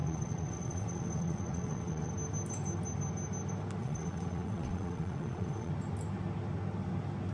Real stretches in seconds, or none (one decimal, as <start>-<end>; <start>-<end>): 2.1-3.8; 5.7-7.3